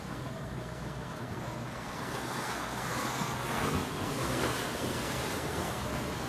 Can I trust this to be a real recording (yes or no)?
no